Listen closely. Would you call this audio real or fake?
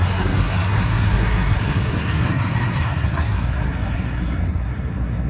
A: fake